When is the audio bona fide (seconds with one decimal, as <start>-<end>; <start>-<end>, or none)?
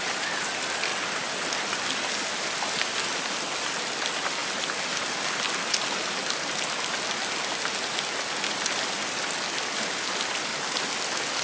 0.0-11.4